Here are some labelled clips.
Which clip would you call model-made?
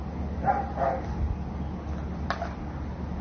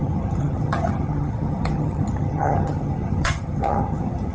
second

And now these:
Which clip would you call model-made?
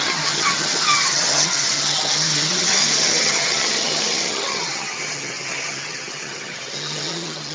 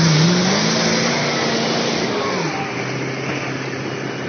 first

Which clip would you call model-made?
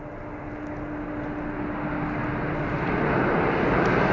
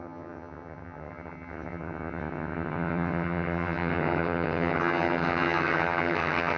second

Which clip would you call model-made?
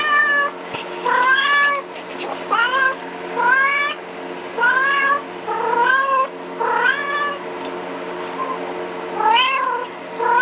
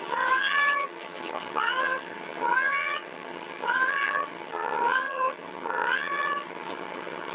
second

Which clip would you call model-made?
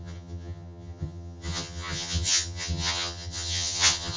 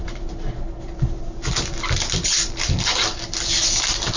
first